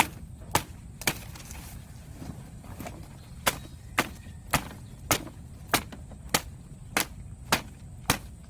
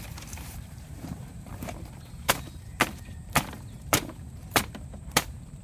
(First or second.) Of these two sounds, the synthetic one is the second